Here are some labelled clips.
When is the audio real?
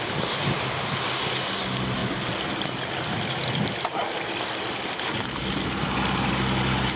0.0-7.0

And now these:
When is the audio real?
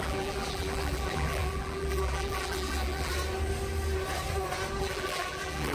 3.1-4.8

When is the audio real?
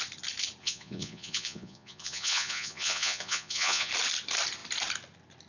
0.0-0.6; 3.9-5.5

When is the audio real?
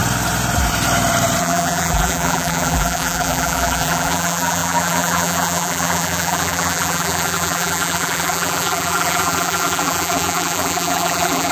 0.0-1.4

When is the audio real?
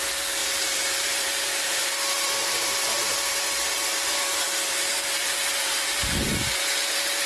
none